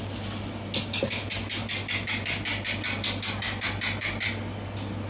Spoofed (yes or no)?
no